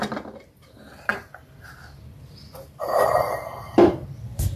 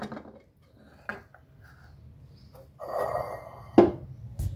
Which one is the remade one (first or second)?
first